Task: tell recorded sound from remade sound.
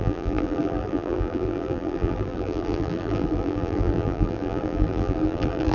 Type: remade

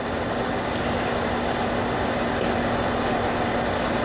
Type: recorded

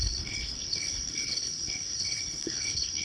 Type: remade